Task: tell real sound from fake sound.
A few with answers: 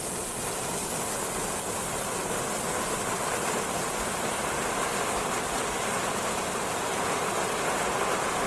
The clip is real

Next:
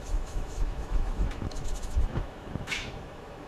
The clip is fake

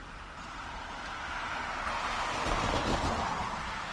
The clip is real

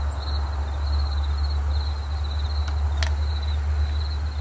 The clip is real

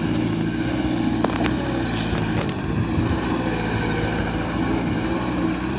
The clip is real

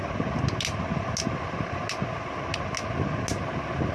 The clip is real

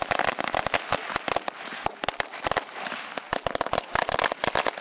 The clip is real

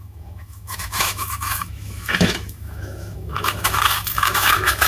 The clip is fake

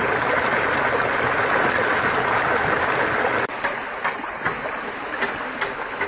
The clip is real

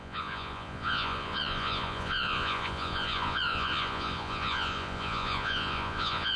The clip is fake